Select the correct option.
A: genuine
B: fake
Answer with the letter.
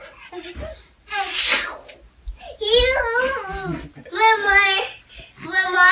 A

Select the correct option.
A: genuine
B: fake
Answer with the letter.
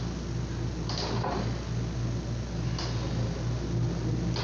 A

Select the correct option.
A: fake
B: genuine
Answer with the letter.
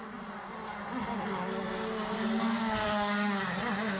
B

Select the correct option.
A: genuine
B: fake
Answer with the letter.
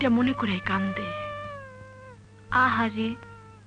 A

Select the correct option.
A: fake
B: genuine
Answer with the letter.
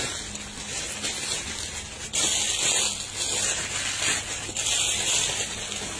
B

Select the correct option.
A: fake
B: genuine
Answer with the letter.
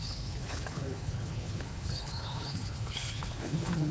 A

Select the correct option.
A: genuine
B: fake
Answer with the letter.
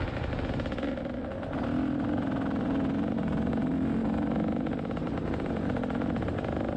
A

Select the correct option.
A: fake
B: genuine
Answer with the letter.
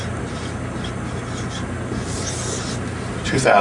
B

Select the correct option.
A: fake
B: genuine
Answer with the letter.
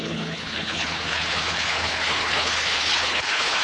A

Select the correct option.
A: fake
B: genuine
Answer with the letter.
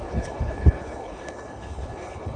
A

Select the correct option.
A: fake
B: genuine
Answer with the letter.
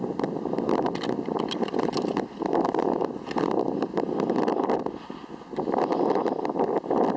B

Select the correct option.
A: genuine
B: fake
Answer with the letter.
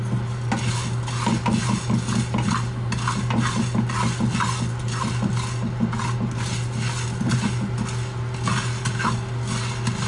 A